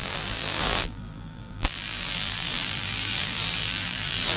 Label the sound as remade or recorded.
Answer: remade